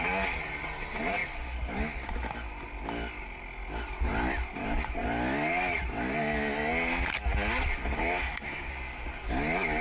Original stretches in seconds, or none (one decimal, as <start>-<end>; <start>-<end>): 0.0-7.8; 8.7-9.8